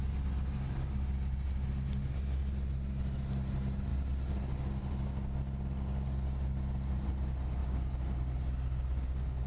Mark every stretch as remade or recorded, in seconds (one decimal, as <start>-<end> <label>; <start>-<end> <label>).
0.0-7.6 recorded; 7.6-8.2 remade; 8.2-9.5 recorded